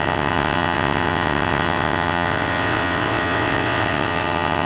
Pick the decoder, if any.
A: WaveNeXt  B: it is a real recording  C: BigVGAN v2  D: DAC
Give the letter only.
A